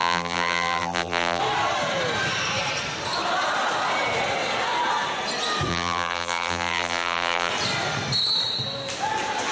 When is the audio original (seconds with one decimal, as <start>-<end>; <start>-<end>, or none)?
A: 1.4-5.7; 7.5-9.5